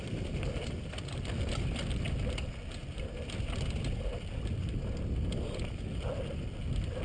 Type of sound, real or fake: real